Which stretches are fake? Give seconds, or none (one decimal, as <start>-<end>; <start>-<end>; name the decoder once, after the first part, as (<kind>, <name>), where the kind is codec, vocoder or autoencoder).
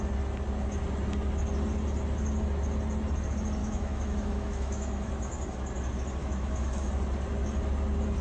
3.6-5.1 (autoencoder, DAC-VAE); 6.2-6.9